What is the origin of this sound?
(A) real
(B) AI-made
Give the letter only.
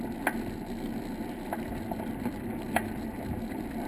A